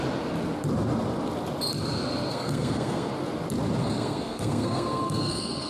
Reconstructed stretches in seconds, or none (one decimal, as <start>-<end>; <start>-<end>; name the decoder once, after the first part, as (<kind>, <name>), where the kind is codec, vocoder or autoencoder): 2.3-3.1 (codec, SNAC); 3.8-5.7